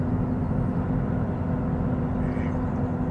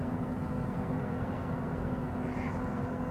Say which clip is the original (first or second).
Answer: first